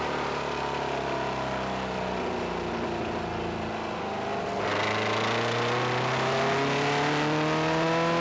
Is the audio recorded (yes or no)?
yes